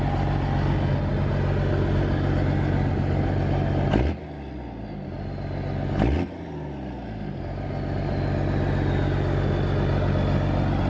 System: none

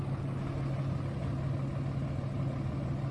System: none